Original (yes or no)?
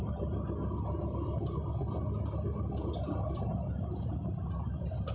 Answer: yes